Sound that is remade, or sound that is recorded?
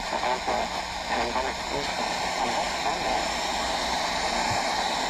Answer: recorded